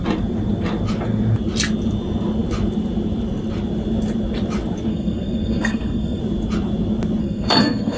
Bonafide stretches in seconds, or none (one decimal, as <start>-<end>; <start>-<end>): 0.0-4.9; 6.2-7.2